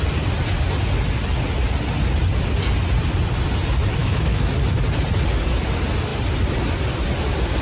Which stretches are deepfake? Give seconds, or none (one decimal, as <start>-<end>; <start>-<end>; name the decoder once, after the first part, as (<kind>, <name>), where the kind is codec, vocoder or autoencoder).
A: 4.0-4.6 (autoencoder, DAC-VAE)